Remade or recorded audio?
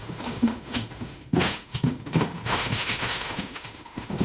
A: remade